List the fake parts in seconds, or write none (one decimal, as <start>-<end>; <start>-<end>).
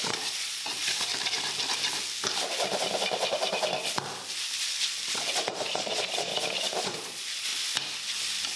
0.0-1.1; 5.1-6.3; 6.8-7.5